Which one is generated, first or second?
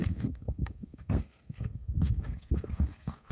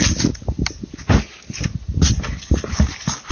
first